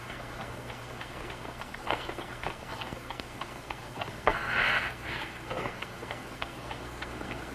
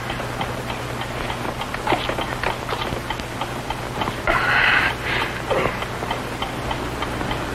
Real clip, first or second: second